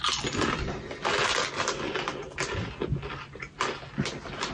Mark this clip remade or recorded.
recorded